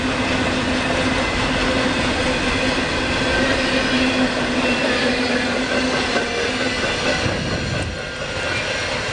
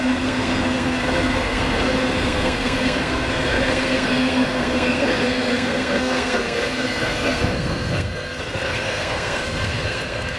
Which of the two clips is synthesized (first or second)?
second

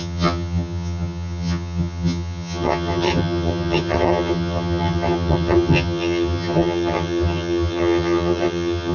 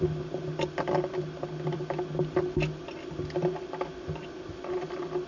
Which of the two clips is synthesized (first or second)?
first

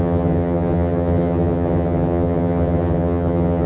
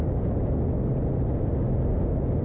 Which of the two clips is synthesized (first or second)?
first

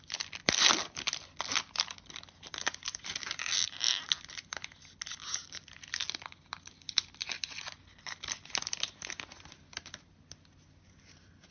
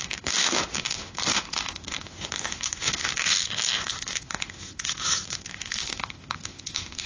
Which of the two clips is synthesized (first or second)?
second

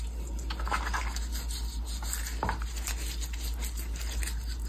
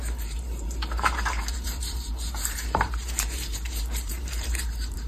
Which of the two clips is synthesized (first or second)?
second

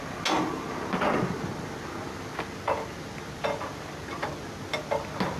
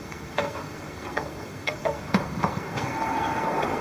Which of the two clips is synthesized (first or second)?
second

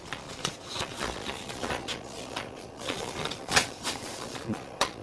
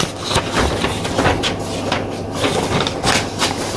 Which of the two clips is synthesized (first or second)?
first